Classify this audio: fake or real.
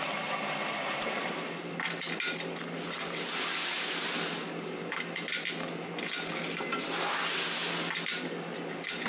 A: real